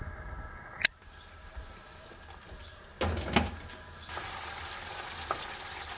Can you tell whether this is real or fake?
real